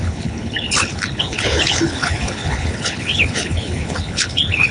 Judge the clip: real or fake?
fake